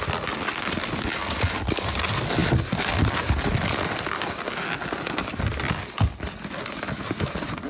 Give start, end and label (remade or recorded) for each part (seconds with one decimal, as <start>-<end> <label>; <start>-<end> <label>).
0.0-7.7 recorded